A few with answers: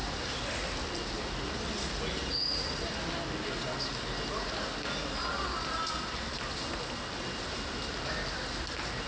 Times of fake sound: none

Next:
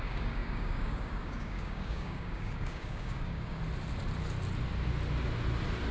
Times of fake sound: 0.0-3.6 (codec, DAC)

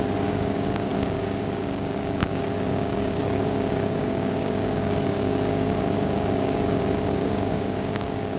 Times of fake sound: 0.0-8.4 (codec, DAC)

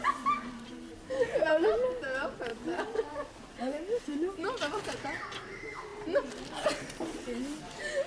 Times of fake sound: 2.5-3.4 (codec, DAC)

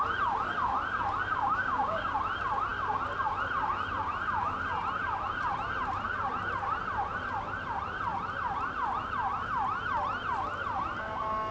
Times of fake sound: 1.3-2.1 (codec, DAC)